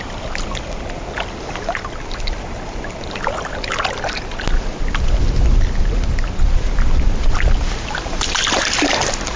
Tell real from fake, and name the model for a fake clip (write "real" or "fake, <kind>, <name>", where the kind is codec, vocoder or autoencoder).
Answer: real